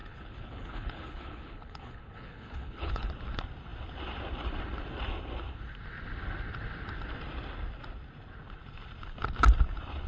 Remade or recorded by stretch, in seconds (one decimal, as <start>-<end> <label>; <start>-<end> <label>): 0.0-3.1 remade; 3.1-10.1 recorded